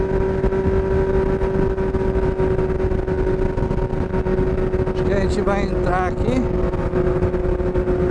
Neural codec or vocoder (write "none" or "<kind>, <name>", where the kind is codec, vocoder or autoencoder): none